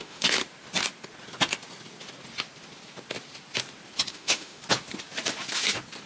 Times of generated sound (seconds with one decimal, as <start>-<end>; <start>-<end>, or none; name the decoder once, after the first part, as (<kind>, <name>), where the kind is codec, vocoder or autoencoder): 0.0-0.4 (autoencoder, DAC-VAE); 4.1-4.6